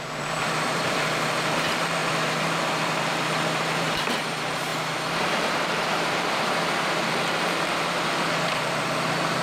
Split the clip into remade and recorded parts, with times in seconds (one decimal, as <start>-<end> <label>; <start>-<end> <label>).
0.0-4.7 remade; 4.7-5.2 recorded; 5.2-9.4 remade